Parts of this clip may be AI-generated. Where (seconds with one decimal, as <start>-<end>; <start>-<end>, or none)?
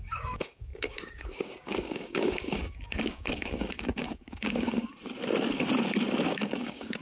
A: 0.0-4.9; 6.3-7.0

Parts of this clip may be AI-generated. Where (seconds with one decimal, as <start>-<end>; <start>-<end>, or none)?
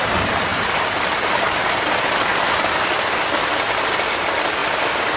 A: 2.3-3.5; 4.6-5.2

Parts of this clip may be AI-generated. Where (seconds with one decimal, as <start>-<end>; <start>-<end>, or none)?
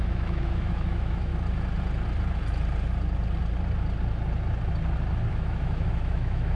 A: 0.0-1.3; 5.3-6.6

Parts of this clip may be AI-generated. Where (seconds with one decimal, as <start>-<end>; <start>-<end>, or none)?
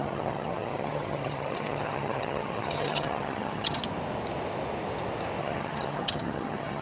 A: 0.0-3.8; 5.4-6.8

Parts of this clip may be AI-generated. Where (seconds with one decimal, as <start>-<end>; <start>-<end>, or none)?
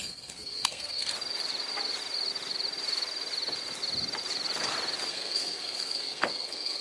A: 0.0-1.1; 5.1-6.8